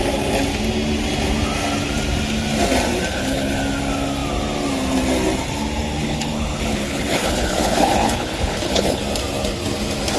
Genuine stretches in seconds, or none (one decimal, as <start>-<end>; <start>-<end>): 0.0-3.1; 3.6-6.0; 9.0-10.2